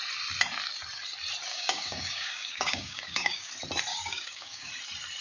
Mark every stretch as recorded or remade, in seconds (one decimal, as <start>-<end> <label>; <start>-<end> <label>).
0.0-1.5 recorded; 1.5-3.5 remade; 3.5-3.9 recorded; 3.9-4.7 remade; 4.7-5.2 recorded

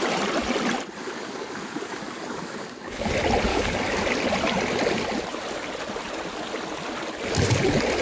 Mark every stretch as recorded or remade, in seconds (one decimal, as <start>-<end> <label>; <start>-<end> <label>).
0.0-1.0 recorded; 1.0-3.1 remade; 3.1-3.5 recorded; 3.5-4.1 remade; 4.1-8.0 recorded

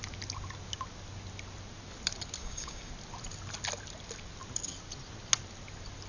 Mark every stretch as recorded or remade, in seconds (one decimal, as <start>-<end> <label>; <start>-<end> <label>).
0.0-2.4 recorded; 2.4-2.9 remade; 2.9-6.1 recorded

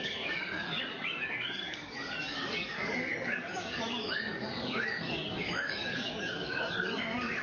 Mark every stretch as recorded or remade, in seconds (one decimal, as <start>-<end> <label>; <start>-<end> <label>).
0.0-7.4 remade

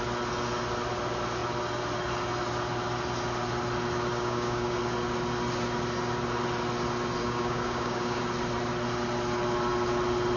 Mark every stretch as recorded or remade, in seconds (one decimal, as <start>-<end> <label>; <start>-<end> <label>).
0.0-4.1 recorded; 4.1-4.8 remade; 4.8-7.2 recorded; 7.2-8.2 remade; 8.2-10.4 recorded

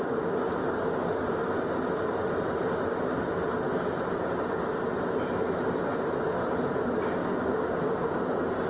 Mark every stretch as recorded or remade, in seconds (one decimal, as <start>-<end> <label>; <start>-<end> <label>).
0.0-0.6 recorded; 0.6-1.3 remade; 1.3-7.2 recorded; 7.2-7.8 remade; 7.8-8.7 recorded

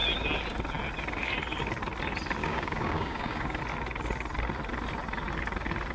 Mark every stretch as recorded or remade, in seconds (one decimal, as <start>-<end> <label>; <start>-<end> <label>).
0.0-2.4 recorded; 2.4-3.6 remade; 3.6-5.9 recorded